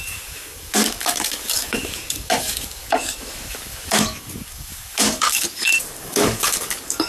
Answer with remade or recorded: remade